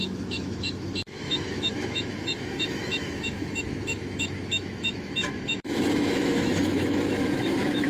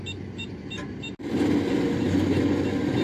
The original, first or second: second